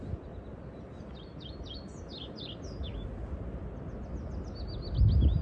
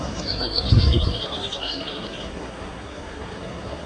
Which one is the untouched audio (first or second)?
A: first